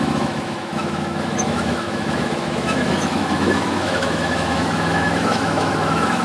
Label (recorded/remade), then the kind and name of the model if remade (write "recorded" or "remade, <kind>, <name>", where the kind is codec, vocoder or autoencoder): remade, autoencoder, DAC-VAE